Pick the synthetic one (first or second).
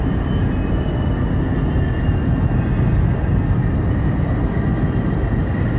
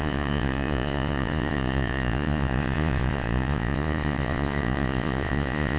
second